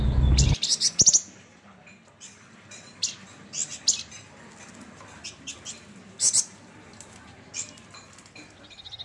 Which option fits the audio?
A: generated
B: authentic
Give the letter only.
B